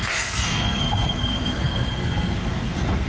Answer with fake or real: fake